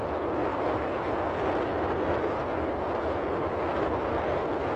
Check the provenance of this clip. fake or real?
real